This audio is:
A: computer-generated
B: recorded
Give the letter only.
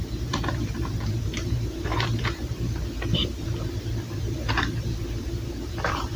A